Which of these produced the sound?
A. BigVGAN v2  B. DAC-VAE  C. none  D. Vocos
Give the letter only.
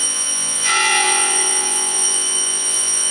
D